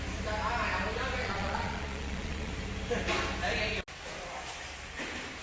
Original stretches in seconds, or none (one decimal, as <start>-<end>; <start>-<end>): 0.0-1.2; 2.5-5.4